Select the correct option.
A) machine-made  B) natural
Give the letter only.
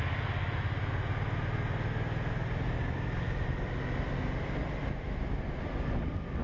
B